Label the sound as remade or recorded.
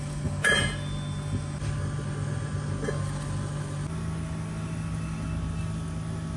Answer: recorded